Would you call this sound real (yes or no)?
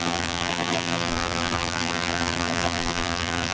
no